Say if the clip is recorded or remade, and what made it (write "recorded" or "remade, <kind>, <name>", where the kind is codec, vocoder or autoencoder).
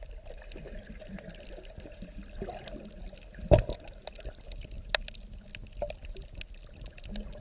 recorded